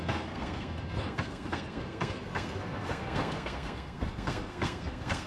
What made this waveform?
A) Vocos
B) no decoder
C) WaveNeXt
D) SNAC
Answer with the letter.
D